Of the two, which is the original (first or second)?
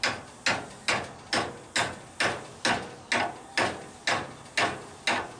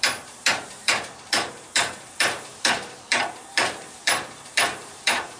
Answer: first